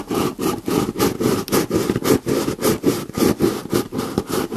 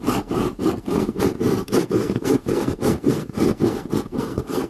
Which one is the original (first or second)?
first